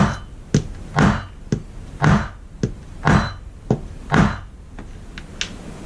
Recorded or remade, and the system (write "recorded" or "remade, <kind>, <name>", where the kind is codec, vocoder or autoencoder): recorded